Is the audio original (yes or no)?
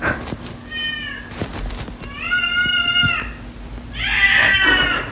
yes